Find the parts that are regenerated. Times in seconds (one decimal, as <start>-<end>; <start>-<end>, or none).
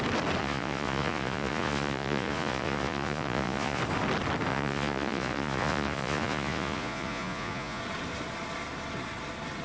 0.4-3.8; 4.5-7.8